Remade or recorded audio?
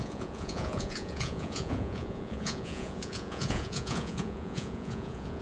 remade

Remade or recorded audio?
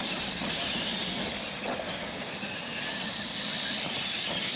recorded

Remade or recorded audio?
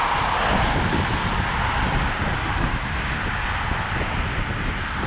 recorded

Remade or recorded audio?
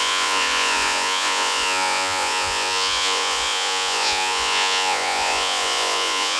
remade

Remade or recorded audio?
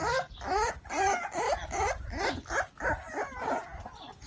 recorded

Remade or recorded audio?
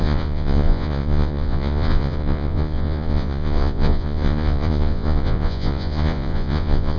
remade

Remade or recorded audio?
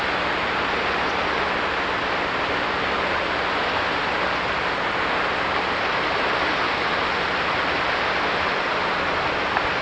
recorded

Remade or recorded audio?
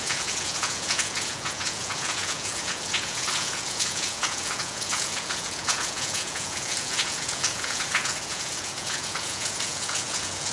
remade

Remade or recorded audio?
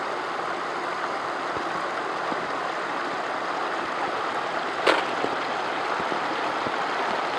recorded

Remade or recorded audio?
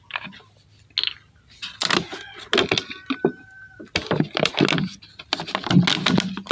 recorded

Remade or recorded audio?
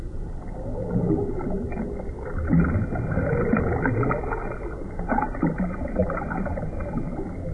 recorded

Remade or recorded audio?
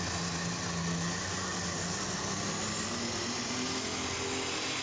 recorded